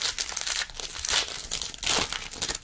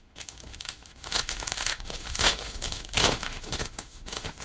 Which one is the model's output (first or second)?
second